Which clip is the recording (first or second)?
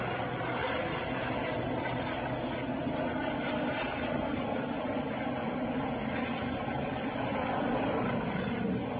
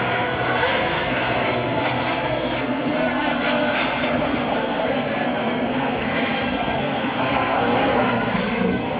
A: first